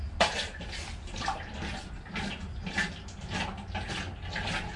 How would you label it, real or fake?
real